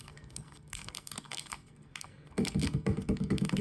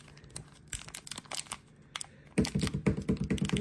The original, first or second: second